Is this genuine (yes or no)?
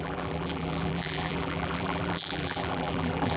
no